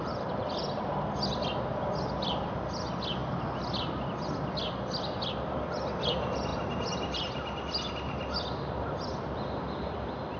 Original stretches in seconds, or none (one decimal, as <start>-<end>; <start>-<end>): 0.0-10.4